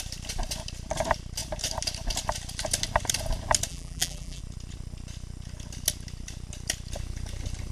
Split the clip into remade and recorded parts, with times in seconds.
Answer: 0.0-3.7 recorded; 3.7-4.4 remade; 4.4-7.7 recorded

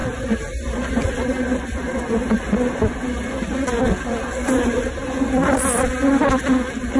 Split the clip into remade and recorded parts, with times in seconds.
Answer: 0.0-7.0 recorded

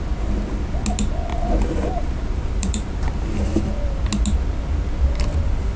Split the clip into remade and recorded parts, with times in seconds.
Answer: 0.0-1.3 recorded; 1.3-3.1 remade; 3.1-5.8 recorded

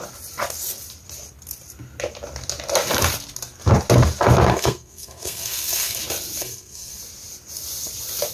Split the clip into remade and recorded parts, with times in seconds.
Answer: 0.0-4.5 recorded; 4.5-6.0 remade; 6.0-6.4 recorded; 6.4-7.0 remade; 7.0-8.3 recorded